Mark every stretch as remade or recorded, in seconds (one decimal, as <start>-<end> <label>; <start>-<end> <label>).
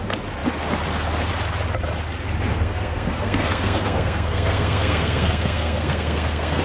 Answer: 0.0-2.5 recorded; 2.5-6.6 remade